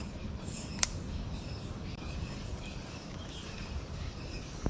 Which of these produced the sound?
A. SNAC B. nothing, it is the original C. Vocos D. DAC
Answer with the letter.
D